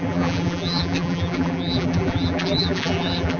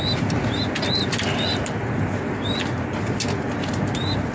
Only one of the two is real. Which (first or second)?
second